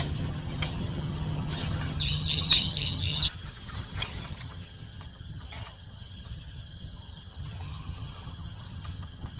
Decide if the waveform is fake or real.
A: fake